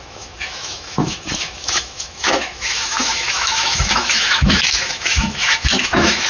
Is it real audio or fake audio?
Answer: fake